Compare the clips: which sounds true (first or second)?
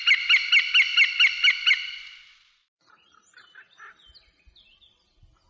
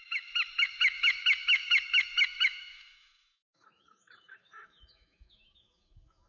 first